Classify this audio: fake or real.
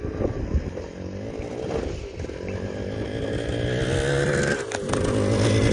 real